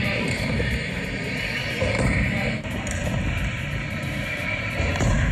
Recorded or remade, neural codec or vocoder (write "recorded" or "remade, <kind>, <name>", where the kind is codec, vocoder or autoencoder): remade, vocoder, BigVGAN v2